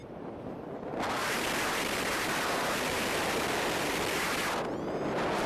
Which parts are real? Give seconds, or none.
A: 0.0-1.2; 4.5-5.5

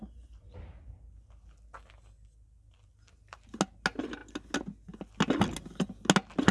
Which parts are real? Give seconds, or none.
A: 0.0-6.5

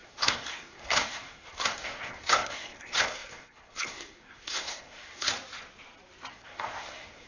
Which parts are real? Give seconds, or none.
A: 5.3-6.3

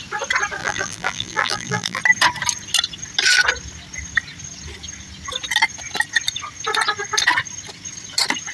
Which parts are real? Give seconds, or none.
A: 0.0-0.6; 2.0-8.5

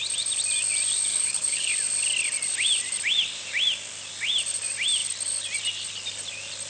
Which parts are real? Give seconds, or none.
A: 0.0-1.1; 1.7-6.7